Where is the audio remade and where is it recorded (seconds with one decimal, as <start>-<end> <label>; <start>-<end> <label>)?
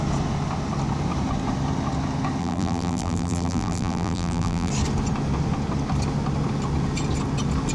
0.0-2.4 recorded; 2.4-4.7 remade; 4.7-7.7 recorded